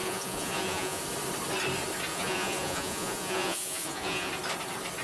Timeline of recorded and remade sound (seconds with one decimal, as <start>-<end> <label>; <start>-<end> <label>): 0.0-1.0 remade; 1.0-2.1 recorded; 2.1-4.3 remade; 4.3-5.0 recorded